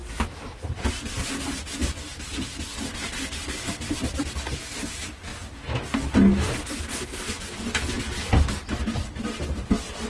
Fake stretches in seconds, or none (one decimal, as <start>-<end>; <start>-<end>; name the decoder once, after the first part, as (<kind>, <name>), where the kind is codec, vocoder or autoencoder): none